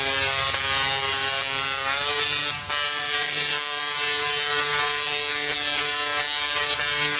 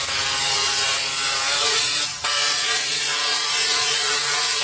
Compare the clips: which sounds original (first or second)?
first